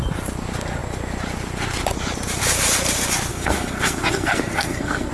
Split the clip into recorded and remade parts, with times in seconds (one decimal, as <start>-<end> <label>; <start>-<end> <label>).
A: 0.0-3.3 recorded; 3.3-5.1 remade